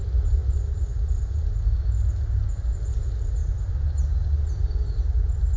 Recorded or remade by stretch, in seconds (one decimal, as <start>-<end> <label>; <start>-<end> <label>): 0.0-5.6 recorded

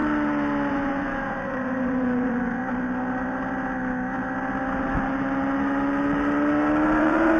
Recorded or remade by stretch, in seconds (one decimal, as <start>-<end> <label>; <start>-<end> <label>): 0.0-0.7 recorded; 0.7-2.6 remade; 2.6-7.0 recorded; 7.0-7.4 remade

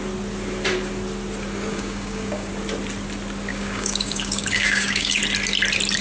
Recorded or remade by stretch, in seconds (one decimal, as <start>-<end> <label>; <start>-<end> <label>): 0.0-1.7 recorded; 1.7-2.5 remade; 2.5-3.5 recorded; 3.5-5.2 remade; 5.2-6.0 recorded

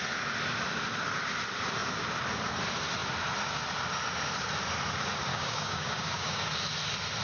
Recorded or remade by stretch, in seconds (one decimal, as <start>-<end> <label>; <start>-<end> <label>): 0.0-5.3 recorded; 5.3-6.5 remade; 6.5-7.2 recorded